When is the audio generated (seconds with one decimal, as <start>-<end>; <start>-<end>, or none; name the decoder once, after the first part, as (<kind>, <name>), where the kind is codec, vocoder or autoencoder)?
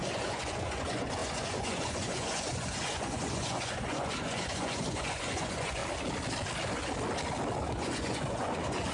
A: 0.0-5.8 (vocoder, Vocos); 7.6-8.9